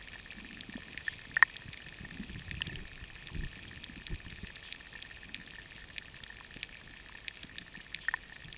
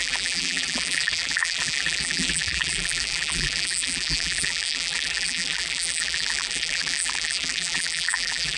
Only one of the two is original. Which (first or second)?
first